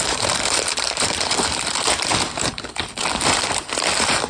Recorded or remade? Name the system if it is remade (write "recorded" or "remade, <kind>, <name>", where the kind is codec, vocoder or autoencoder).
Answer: remade, vocoder, BigVGAN v2